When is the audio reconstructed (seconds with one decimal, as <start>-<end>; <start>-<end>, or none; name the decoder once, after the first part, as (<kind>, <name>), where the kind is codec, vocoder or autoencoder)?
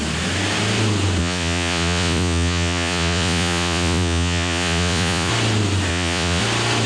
1.2-5.3 (vocoder, Vocos); 5.9-6.4